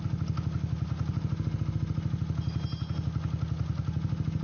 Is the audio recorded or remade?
recorded